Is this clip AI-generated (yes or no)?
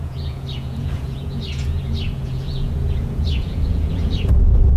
yes